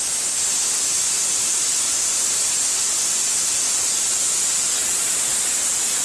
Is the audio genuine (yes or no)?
yes